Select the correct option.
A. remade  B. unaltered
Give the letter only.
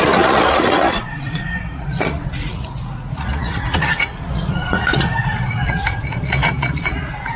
A